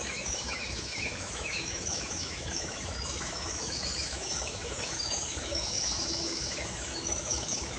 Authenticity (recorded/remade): remade